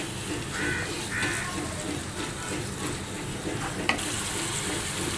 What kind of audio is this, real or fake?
real